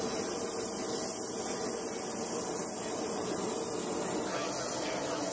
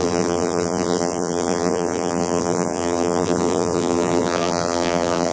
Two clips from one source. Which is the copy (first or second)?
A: second